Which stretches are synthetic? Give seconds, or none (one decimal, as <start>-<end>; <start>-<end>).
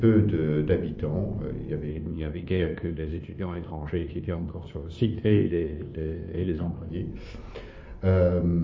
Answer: 1.9-6.9